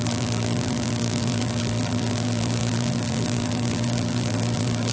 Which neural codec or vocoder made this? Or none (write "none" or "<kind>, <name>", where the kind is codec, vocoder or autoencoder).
vocoder, BigVGAN v2